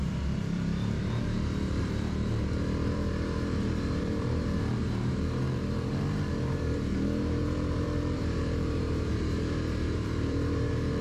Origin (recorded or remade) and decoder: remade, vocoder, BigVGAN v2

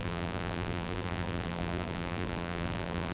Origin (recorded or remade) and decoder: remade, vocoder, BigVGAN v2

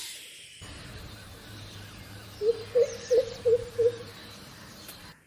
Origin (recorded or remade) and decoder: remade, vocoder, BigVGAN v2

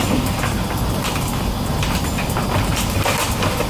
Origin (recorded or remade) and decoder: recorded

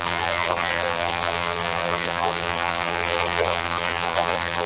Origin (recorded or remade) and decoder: remade, vocoder, BigVGAN v2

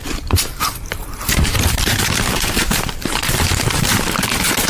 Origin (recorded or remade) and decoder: remade, vocoder, BigVGAN v2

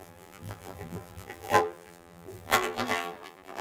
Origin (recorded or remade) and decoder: remade, vocoder, BigVGAN v2